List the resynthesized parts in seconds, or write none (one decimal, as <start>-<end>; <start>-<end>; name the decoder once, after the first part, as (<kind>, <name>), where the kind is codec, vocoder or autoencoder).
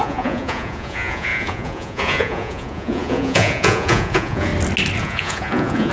0.0-4.5 (vocoder, Vocos); 5.0-5.9